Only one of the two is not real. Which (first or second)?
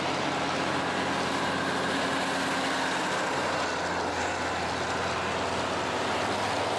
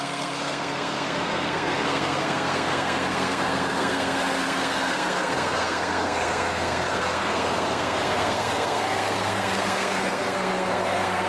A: second